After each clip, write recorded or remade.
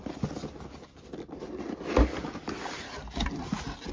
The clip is recorded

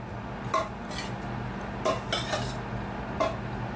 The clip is recorded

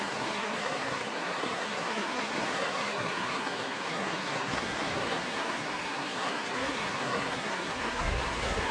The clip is remade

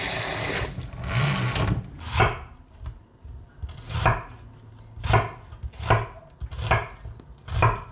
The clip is recorded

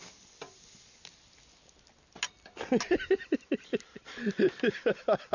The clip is recorded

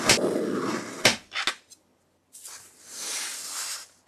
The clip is recorded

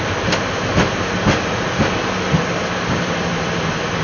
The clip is recorded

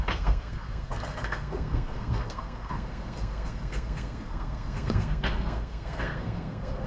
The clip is remade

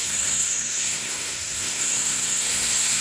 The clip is remade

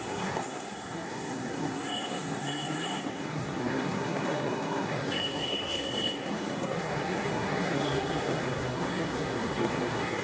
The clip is remade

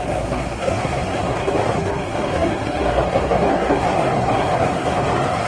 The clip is remade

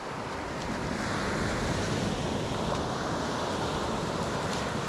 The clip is recorded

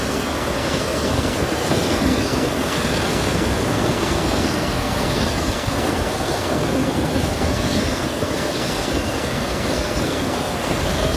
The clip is remade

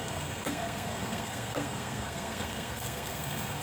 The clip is remade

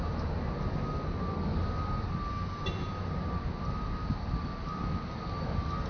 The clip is recorded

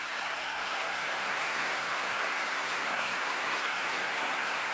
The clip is remade